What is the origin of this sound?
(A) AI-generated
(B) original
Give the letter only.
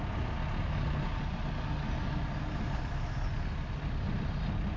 B